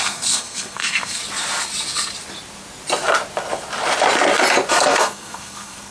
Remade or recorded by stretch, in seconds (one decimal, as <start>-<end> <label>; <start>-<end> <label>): 0.0-1.2 remade; 1.2-4.7 recorded; 4.7-5.9 remade